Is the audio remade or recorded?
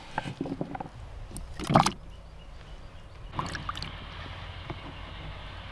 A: recorded